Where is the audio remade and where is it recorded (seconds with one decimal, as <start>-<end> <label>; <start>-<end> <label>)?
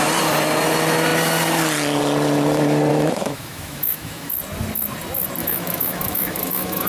0.0-2.9 recorded; 2.9-4.3 remade; 4.3-5.4 recorded; 5.4-6.9 remade